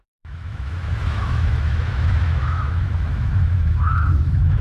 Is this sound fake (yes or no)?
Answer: yes